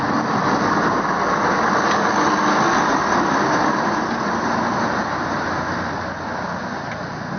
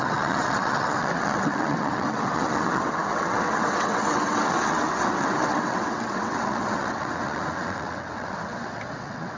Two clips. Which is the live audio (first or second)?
first